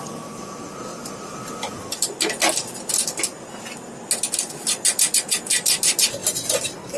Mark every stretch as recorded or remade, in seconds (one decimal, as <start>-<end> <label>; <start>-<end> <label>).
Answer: 0.0-7.0 recorded